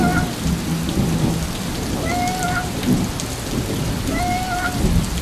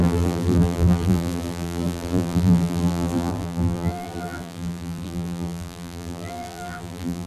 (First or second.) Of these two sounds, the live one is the first